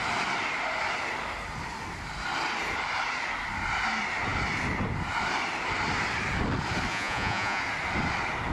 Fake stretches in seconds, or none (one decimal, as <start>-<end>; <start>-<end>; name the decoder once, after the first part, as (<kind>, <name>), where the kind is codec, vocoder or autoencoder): 6.9-7.6 (vocoder, Vocos)